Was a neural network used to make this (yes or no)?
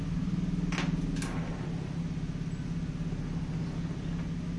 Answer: no